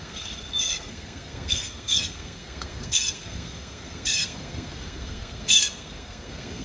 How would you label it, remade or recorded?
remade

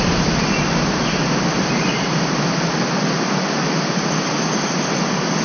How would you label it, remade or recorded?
recorded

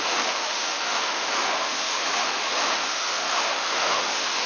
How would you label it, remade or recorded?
remade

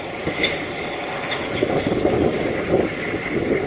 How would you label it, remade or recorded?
recorded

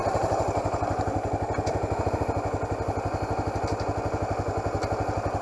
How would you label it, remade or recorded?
recorded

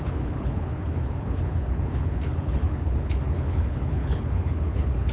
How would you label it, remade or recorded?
remade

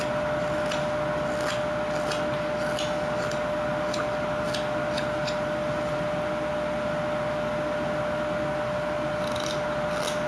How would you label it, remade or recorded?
recorded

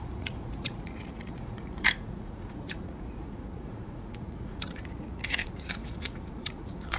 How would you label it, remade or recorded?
remade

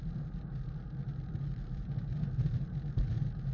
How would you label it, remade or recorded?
recorded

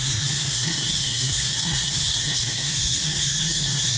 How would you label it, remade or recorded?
remade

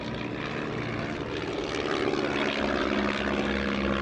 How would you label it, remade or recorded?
recorded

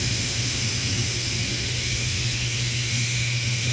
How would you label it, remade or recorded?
remade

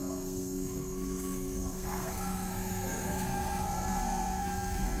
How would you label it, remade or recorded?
remade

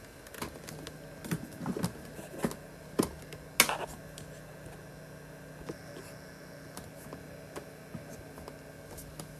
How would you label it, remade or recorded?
recorded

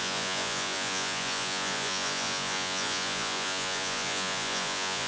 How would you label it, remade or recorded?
remade